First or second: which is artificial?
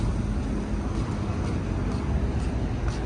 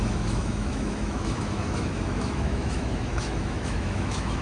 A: second